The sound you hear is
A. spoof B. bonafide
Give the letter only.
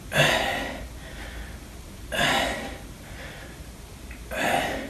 B